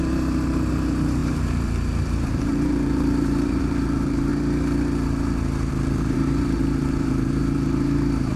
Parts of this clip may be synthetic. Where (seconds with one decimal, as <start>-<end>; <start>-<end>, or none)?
0.0-4.3; 5.7-8.4